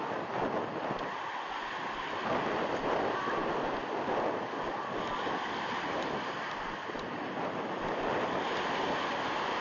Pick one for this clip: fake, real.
real